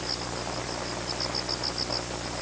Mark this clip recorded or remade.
recorded